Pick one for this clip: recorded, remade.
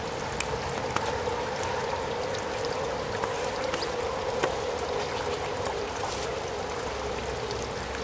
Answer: recorded